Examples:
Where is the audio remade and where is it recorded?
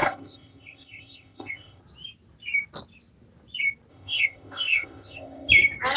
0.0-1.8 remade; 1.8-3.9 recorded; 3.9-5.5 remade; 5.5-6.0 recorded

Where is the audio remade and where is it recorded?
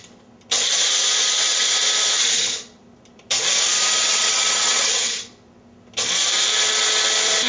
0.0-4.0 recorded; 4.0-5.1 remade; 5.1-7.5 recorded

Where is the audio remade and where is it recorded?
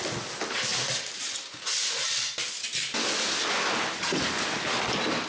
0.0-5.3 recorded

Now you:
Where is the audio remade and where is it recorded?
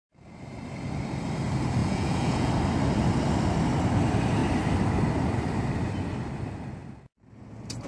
0.0-1.8 recorded; 1.8-2.5 remade; 2.5-7.9 recorded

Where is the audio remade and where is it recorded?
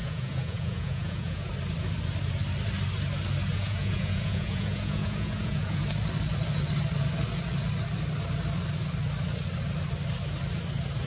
0.0-1.5 remade; 1.5-3.5 recorded; 3.5-5.8 remade; 5.8-11.1 recorded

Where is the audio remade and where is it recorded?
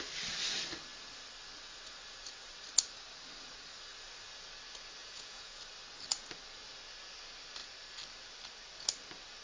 0.0-5.0 recorded; 5.0-5.6 remade; 5.6-9.4 recorded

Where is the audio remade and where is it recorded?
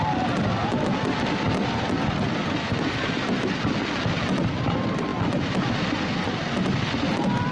0.0-7.5 recorded